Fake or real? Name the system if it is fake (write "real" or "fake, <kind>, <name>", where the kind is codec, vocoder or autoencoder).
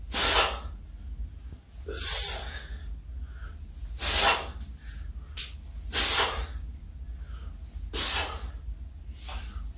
real